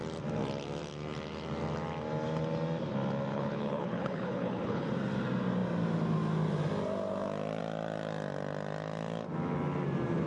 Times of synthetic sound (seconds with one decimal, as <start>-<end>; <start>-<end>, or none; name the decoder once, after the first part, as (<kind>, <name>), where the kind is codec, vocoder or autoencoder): 3.3-4.9 (codec, HILCodec)